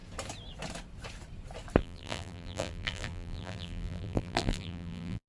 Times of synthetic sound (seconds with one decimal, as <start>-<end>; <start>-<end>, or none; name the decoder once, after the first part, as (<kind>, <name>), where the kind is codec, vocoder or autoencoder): 1.8-5.3 (vocoder, BigVGAN v2)